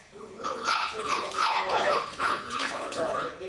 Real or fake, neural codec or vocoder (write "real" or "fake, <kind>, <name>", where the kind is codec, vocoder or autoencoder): fake, codec, HILCodec